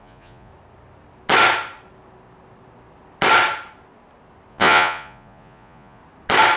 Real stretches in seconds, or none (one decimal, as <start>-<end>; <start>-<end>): 0.5-4.5; 6.0-6.6

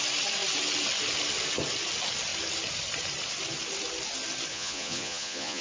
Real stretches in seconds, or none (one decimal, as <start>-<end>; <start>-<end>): 0.0-4.5

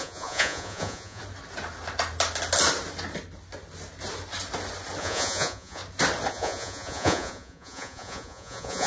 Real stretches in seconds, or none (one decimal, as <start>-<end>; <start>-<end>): 1.2-5.0; 5.8-6.3

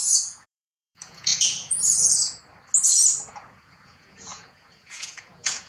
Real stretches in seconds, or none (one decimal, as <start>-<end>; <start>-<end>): 2.4-3.3

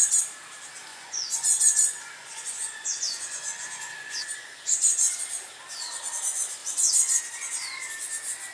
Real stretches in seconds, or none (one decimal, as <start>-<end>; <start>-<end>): 0.0-0.9; 5.1-6.6; 7.2-8.5

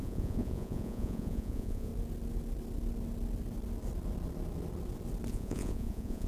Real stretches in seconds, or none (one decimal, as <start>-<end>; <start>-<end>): 1.9-5.3

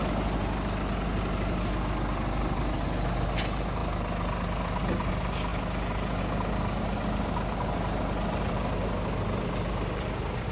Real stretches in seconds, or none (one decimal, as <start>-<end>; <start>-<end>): 0.0-10.5